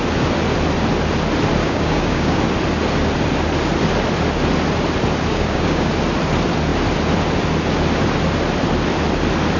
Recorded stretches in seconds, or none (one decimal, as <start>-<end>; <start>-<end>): 0.0-1.6; 2.4-5.3; 5.9-9.6